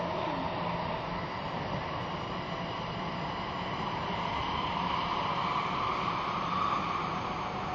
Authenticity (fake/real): real